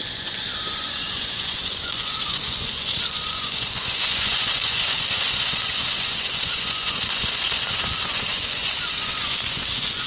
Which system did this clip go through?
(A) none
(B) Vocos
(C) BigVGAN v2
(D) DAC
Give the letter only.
B